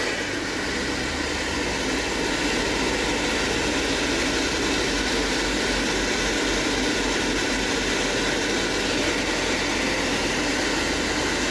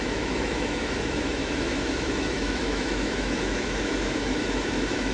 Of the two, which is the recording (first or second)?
first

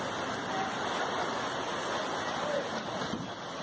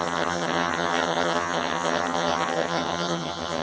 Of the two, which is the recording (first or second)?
first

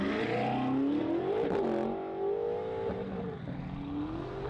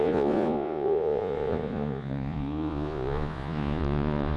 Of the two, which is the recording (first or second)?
first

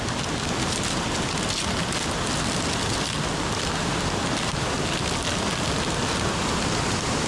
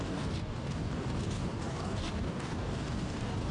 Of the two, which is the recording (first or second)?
first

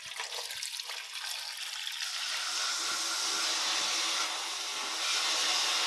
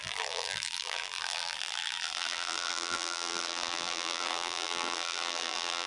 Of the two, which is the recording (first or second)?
first